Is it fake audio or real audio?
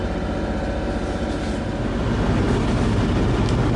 real